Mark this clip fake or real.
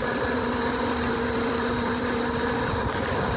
fake